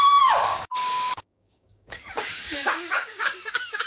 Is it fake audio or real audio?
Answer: fake